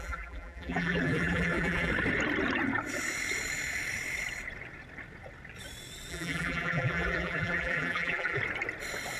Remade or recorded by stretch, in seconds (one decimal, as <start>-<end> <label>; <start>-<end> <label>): 0.0-1.9 remade; 1.9-6.1 recorded; 6.1-8.4 remade; 8.4-9.2 recorded

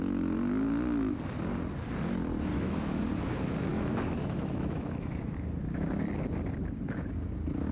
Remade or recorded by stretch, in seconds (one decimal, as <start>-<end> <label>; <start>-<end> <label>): 0.0-2.5 recorded; 2.5-3.0 remade; 3.0-3.7 recorded; 3.7-5.2 remade; 5.2-7.7 recorded

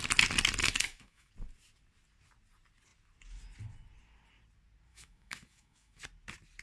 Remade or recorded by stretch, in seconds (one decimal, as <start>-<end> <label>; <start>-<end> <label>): 0.0-0.6 recorded; 0.6-1.3 remade; 1.3-4.9 recorded; 4.9-6.0 remade; 6.0-6.6 recorded

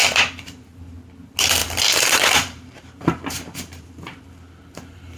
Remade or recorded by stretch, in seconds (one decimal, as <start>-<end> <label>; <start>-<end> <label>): 0.0-0.8 remade; 0.8-1.6 recorded; 1.6-4.2 remade; 4.2-5.2 recorded

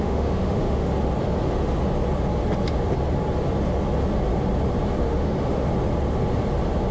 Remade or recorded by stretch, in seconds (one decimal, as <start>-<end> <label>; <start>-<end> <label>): 0.0-0.9 remade; 0.9-5.0 recorded; 5.0-5.6 remade; 5.6-6.9 recorded

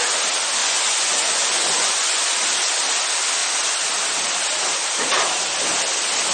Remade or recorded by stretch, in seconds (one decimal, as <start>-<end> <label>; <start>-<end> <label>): 0.0-0.6 recorded; 0.6-2.2 remade; 2.2-6.3 recorded

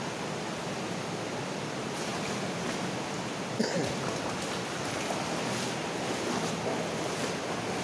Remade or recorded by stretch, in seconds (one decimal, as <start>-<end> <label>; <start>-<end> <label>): 0.0-7.8 recorded